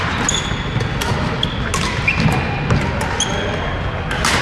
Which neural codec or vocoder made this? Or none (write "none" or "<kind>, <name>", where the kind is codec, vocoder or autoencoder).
none